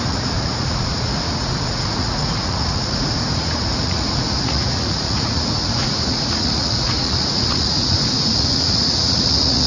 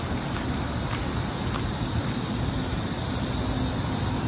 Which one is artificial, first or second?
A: first